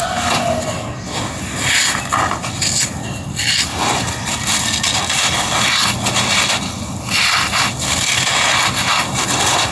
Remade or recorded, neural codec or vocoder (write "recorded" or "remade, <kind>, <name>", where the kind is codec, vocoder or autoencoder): recorded